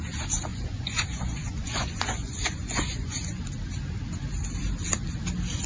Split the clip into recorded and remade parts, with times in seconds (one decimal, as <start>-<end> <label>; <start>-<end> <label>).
0.0-0.5 recorded; 0.5-3.4 remade; 3.4-5.7 recorded

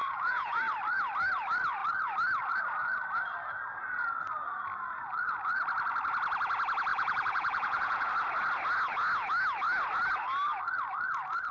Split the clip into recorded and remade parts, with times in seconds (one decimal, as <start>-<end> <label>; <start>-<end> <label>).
0.0-0.6 remade; 0.6-6.9 recorded; 6.9-8.1 remade; 8.1-11.5 recorded

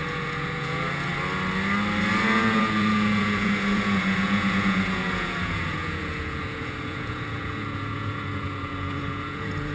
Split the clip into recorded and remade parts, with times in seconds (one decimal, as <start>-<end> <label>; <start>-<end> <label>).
0.0-1.1 remade; 1.1-2.2 recorded; 2.2-9.7 remade

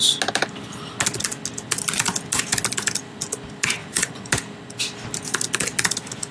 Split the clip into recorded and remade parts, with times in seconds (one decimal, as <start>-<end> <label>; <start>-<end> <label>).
0.0-3.8 recorded; 3.8-4.3 remade; 4.3-6.3 recorded

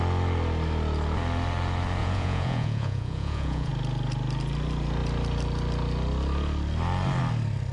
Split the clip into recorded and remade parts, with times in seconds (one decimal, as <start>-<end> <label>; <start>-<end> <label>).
0.0-2.0 recorded; 2.0-3.7 remade; 3.7-7.7 recorded

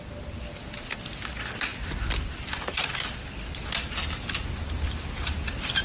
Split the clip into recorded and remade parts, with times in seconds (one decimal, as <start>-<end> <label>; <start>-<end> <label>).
0.0-5.8 recorded